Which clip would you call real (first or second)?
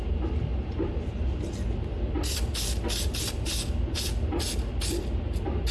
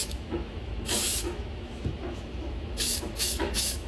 first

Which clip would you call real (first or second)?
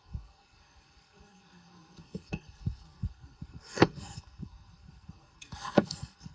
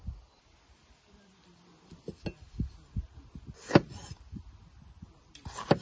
second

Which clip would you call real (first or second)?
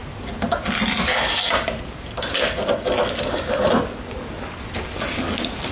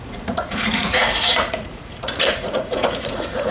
first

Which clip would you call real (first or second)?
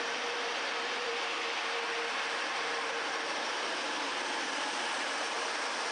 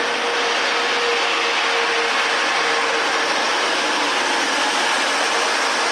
second